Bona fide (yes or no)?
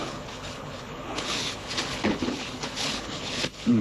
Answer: no